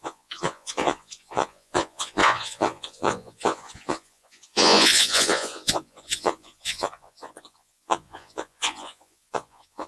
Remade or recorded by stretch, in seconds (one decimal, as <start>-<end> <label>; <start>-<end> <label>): 0.0-9.9 remade